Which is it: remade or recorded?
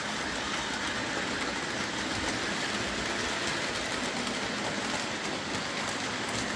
recorded